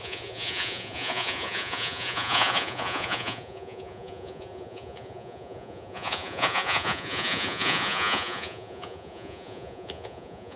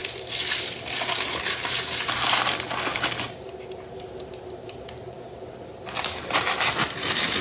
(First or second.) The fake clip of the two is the first